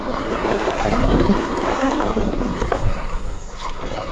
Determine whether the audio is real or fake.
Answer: fake